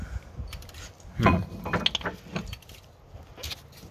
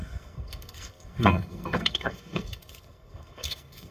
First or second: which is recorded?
first